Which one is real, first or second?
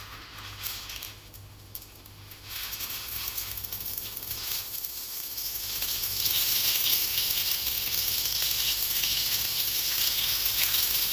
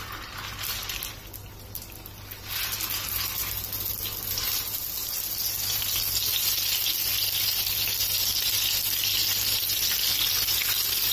second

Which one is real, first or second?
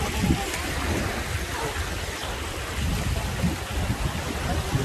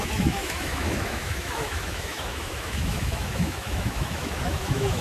first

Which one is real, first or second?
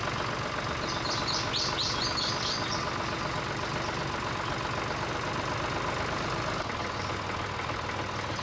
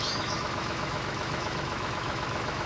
first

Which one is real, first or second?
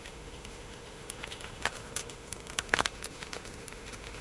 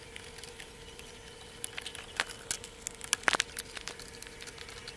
second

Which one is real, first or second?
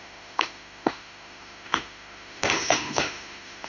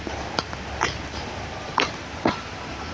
second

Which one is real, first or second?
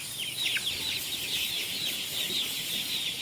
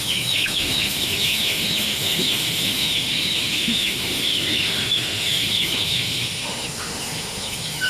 first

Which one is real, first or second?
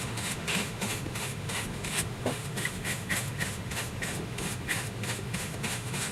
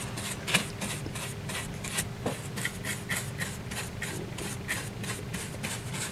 second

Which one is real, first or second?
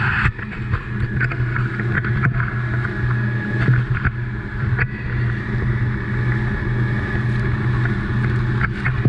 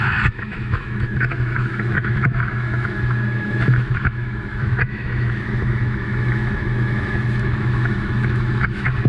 first